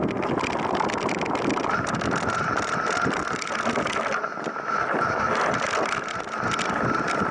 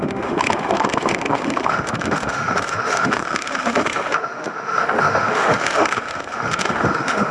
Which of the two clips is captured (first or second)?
first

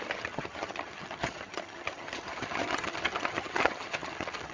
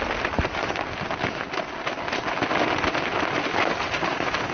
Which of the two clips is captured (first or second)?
second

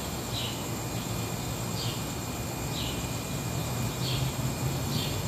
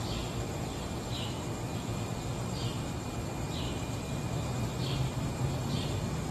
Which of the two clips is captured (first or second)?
first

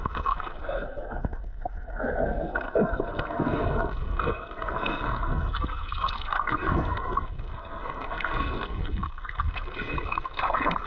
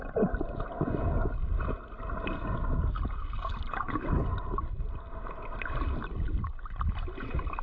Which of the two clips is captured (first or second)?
second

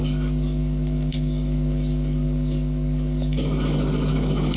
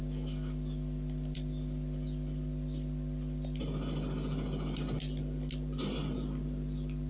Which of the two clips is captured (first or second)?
second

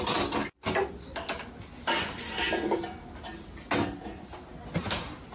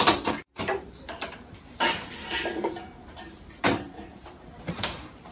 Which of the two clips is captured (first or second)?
first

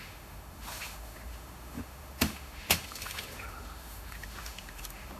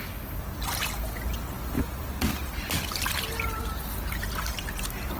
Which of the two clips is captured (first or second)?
second